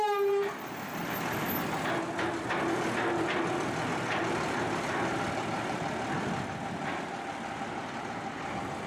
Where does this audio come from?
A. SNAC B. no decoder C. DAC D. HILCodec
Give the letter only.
B